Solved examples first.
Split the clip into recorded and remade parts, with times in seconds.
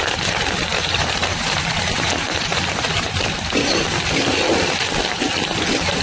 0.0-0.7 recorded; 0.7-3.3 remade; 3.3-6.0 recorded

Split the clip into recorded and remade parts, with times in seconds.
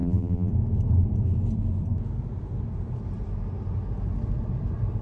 0.0-0.5 remade; 0.5-5.0 recorded